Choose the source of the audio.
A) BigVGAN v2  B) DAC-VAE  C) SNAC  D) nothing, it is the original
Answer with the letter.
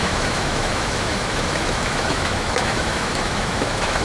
B